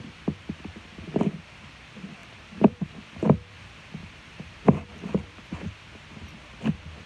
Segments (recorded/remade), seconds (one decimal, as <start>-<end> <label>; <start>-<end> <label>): 0.0-2.2 recorded; 2.2-3.0 remade; 3.0-4.0 recorded; 4.0-5.5 remade; 5.5-7.1 recorded

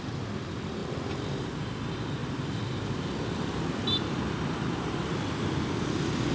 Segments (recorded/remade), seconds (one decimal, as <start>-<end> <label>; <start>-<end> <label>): 0.0-2.2 recorded; 2.2-6.3 remade

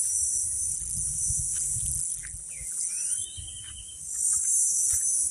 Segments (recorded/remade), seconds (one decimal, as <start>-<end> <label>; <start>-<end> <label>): 0.0-0.7 recorded; 0.7-2.9 remade; 2.9-5.3 recorded